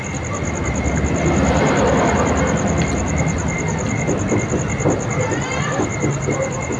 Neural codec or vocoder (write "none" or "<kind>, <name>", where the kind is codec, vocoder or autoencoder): none